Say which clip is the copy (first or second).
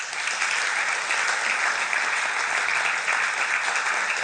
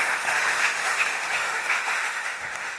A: second